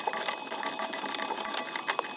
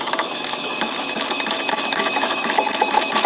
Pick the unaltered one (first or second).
first